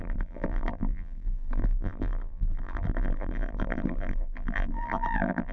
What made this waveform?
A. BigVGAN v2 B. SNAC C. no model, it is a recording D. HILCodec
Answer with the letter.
A